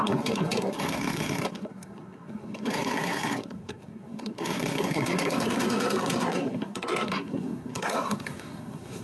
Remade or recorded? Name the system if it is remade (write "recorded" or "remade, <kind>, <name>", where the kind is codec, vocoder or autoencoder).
remade, codec, SNAC